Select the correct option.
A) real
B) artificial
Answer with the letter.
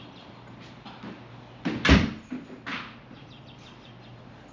A